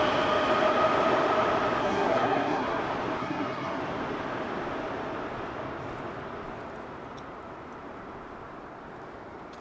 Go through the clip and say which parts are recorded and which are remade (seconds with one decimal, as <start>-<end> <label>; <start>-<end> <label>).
0.0-1.8 recorded; 1.8-2.8 remade; 2.8-3.2 recorded; 3.2-3.8 remade; 3.8-9.6 recorded